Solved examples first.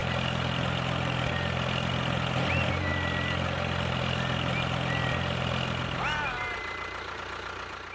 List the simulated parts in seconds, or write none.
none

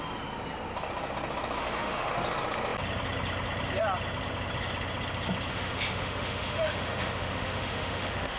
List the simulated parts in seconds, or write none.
1.6-2.1; 5.5-8.4

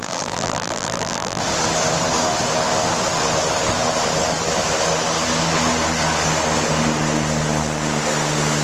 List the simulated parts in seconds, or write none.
0.0-1.4

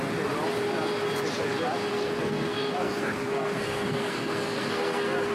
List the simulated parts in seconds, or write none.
1.9-5.3

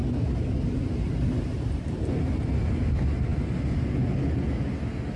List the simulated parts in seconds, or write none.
none

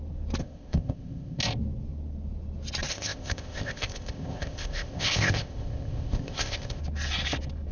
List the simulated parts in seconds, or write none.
0.4-1.4; 2.9-6.8

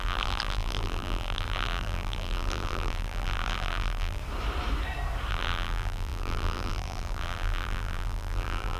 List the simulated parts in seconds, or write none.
0.0-4.2; 5.3-8.8

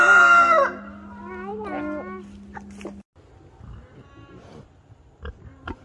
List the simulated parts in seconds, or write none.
none